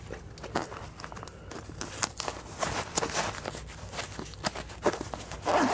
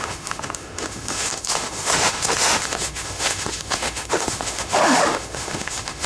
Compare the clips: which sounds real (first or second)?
first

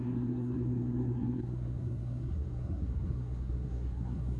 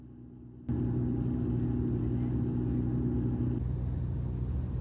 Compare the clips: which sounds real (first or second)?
second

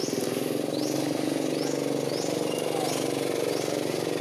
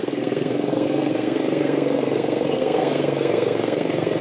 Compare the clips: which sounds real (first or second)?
first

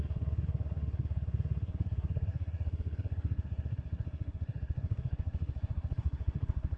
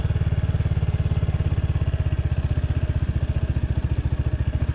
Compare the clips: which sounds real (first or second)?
second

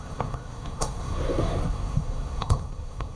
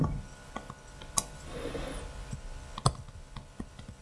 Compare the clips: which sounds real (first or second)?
second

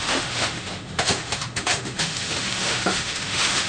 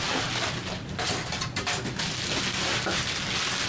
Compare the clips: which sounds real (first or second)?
second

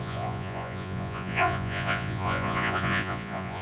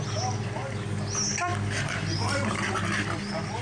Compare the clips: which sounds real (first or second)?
second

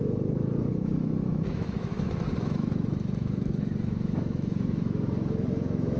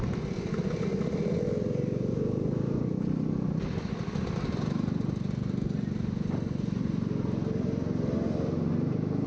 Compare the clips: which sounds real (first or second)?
second